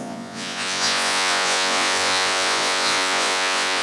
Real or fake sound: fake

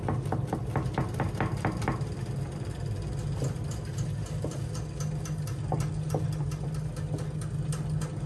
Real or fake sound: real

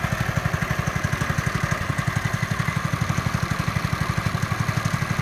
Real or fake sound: real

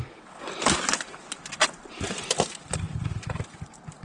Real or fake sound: fake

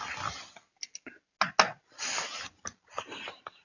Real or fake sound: real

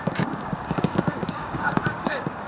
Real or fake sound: fake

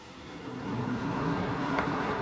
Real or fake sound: fake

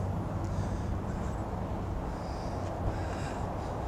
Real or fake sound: real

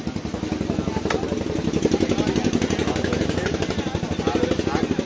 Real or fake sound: real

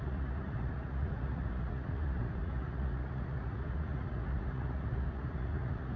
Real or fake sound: fake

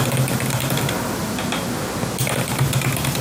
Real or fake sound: real